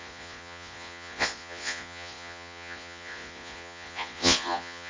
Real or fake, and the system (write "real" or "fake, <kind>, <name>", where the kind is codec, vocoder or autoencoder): fake, vocoder, Vocos